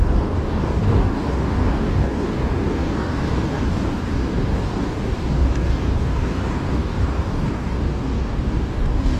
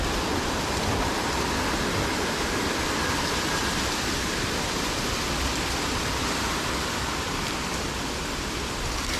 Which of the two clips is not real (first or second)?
first